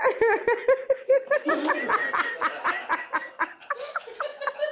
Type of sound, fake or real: real